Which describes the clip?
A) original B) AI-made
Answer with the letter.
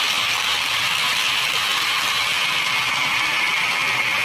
A